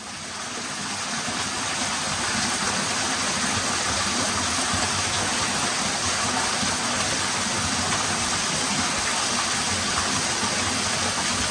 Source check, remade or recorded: recorded